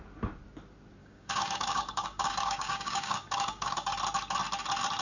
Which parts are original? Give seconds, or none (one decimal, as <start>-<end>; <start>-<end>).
0.0-1.0; 4.0-5.0